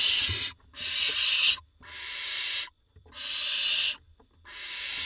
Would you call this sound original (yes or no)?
yes